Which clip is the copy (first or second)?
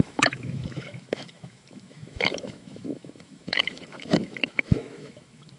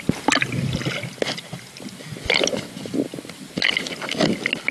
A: first